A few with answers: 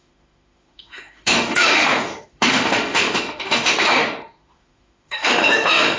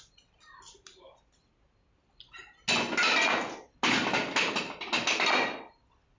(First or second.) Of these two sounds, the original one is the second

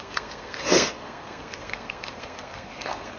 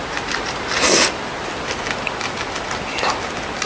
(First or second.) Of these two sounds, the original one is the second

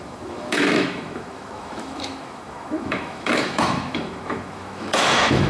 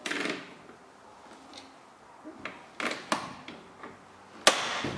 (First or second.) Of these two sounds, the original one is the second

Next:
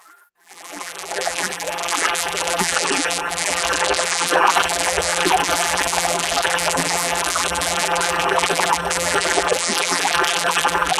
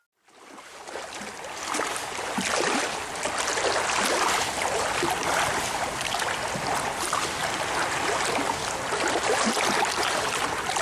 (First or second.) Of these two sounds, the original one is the second